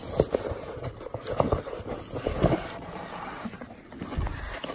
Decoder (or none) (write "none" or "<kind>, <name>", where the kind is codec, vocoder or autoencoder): none